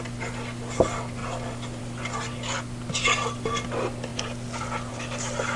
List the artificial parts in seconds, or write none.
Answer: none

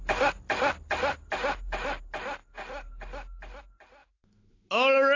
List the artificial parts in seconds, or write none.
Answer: 4.0-5.2 (autoencoder, DAC-VAE)

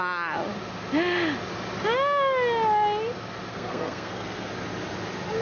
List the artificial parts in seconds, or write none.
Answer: 3.5-4.5 (codec, SNAC)

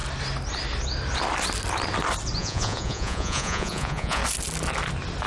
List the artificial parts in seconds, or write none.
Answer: 2.4-4.2 (vocoder, Vocos)